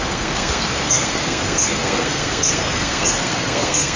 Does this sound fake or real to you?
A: fake